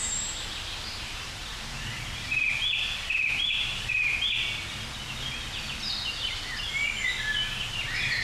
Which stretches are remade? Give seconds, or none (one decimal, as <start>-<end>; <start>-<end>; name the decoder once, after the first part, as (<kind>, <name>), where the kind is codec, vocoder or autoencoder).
0.0-4.1 (vocoder, BigVGAN v2); 7.6-8.2